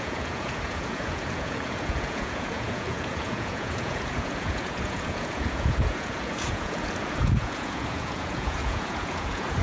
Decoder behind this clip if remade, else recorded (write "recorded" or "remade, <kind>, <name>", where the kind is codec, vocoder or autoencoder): remade, vocoder, Vocos